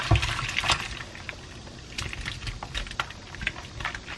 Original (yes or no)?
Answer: yes